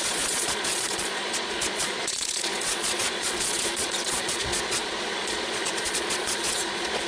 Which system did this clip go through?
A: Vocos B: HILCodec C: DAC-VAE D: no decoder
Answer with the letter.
A